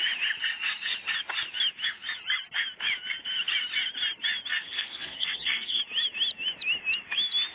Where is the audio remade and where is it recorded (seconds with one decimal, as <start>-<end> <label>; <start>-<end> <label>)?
0.0-4.6 recorded; 4.6-5.8 remade; 5.8-7.5 recorded